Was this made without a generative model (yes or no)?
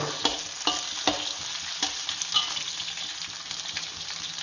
yes